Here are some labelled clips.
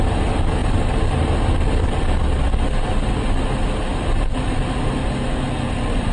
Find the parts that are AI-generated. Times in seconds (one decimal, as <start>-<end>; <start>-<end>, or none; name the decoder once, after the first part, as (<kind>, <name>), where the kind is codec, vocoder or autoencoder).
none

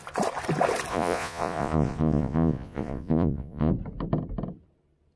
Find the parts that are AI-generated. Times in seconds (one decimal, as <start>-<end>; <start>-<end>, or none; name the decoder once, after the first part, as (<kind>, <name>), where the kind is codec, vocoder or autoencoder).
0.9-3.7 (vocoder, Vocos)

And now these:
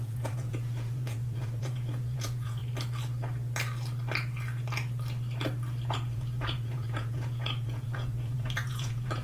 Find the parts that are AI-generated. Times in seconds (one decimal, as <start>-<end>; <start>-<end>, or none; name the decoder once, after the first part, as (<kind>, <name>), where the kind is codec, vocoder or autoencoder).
0.0-2.6 (vocoder, Vocos); 5.9-9.2

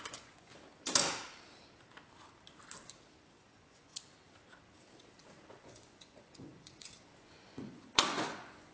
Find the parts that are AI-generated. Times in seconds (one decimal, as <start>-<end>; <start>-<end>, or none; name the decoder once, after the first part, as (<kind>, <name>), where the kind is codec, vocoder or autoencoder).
0.0-0.5 (vocoder, Vocos); 3.4-3.9; 5.6-8.7